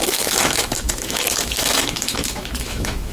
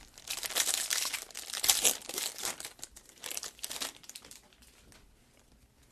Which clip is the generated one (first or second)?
first